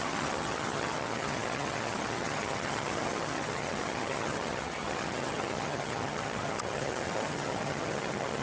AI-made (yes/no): yes